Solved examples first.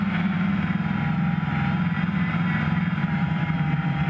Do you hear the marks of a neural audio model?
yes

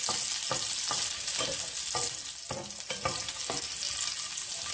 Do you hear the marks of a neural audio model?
no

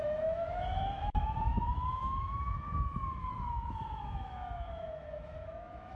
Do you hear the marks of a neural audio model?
yes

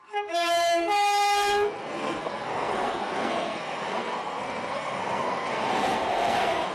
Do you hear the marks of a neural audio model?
yes